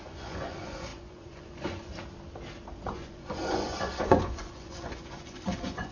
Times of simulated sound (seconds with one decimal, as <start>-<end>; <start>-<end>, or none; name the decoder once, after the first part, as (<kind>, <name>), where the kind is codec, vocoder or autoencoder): 0.0-1.9 (vocoder, Vocos); 2.9-5.9